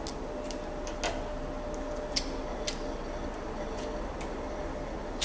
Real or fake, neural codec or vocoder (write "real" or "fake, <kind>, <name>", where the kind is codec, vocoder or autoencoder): real